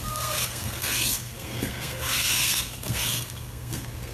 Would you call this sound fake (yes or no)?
yes